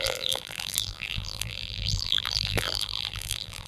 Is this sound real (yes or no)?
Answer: no